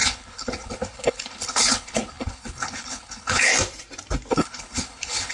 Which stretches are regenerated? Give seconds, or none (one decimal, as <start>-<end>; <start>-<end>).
0.0-3.5; 4.3-5.3